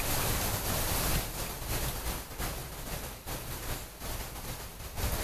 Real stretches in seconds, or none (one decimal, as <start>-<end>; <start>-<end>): 0.0-2.6; 3.3-5.2